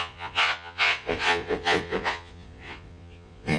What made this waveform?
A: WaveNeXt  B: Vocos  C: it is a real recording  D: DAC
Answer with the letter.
B